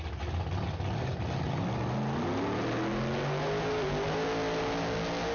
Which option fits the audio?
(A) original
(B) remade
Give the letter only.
A